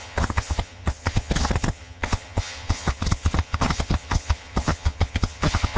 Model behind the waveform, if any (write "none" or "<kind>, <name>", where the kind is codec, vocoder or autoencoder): vocoder, HiFi-GAN